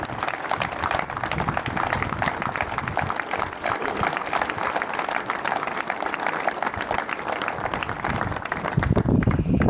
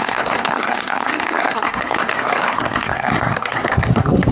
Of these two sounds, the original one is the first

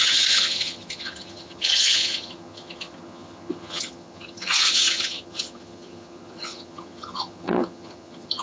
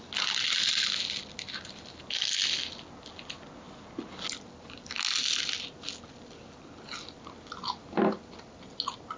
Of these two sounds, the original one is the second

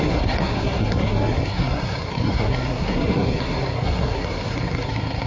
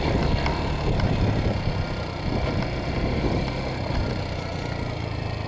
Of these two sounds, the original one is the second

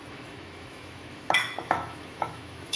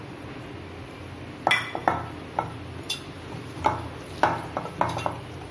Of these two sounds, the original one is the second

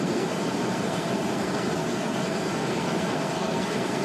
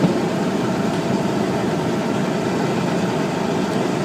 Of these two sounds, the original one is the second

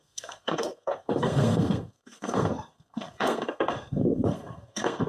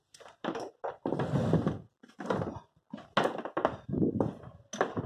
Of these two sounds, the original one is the second